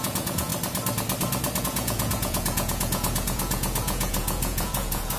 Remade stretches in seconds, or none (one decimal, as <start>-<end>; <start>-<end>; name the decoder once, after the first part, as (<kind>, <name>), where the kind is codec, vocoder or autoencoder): 0.0-0.5 (vocoder, Vocos); 1.6-5.2